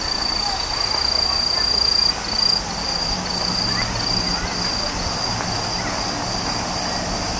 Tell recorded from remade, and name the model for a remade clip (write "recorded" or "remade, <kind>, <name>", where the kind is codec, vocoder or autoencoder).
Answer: recorded